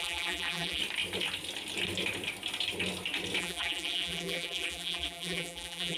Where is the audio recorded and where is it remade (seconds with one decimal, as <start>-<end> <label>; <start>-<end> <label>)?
0.0-0.8 remade; 0.8-3.4 recorded; 3.4-6.0 remade